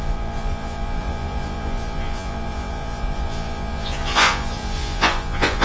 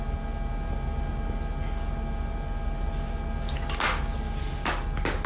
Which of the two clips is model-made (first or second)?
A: first